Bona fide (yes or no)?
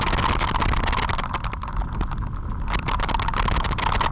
yes